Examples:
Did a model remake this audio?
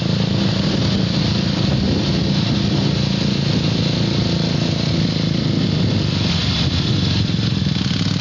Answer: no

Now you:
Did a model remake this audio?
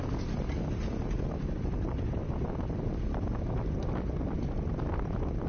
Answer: no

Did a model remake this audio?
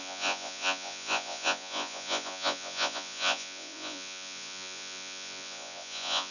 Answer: yes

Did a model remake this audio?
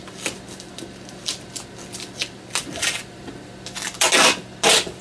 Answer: no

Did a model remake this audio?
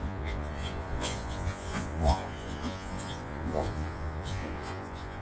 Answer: yes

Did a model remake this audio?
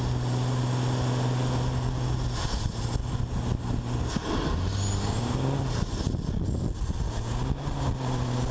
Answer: no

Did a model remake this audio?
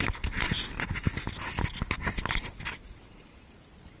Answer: no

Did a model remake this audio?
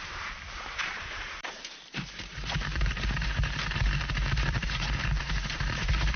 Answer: yes